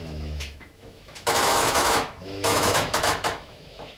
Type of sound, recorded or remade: remade